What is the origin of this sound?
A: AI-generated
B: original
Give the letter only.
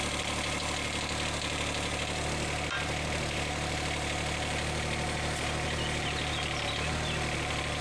B